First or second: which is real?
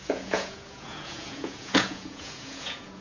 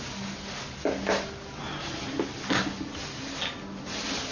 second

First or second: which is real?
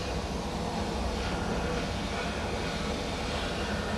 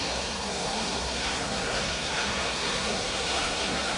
first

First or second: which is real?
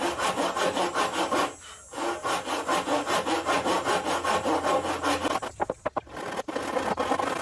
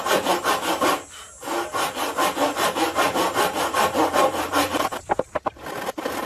first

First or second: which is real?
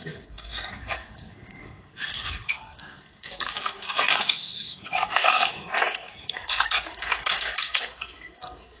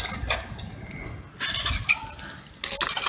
second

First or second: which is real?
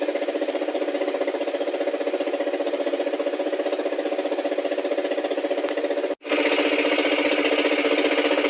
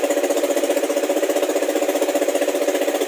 first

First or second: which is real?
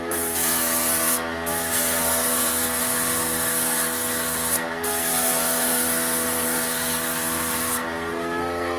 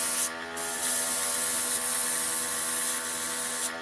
second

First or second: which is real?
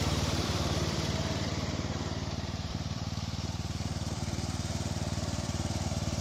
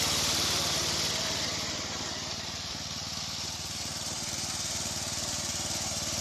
second